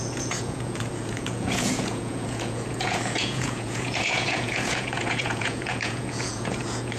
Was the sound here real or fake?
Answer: fake